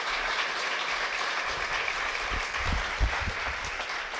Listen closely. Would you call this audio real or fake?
real